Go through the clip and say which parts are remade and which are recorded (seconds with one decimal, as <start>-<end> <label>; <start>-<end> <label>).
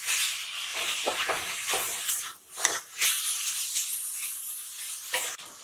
0.0-0.7 recorded; 0.7-2.7 remade; 2.7-5.6 recorded